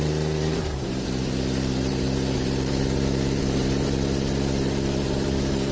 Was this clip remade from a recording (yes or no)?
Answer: yes